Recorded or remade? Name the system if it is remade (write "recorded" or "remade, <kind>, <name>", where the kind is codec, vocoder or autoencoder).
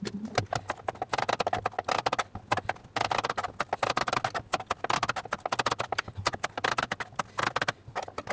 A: recorded